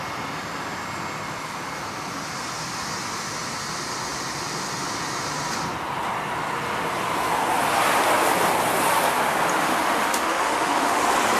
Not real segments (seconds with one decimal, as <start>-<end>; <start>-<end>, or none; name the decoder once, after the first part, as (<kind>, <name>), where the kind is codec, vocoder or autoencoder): 9.6-11.0 (autoencoder, DAC-VAE)